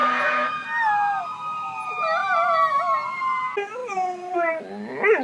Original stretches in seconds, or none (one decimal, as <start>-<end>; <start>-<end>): 1.2-2.2; 3.2-3.8; 4.6-5.2